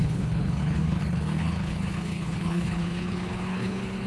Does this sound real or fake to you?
fake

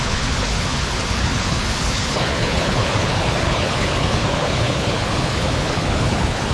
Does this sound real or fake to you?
fake